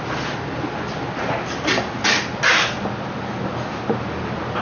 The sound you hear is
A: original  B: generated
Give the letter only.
A